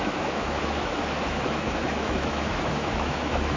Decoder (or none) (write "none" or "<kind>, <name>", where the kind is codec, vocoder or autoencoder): autoencoder, DAC-VAE